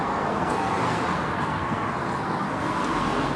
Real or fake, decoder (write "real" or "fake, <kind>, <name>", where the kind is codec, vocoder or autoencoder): fake, codec, SNAC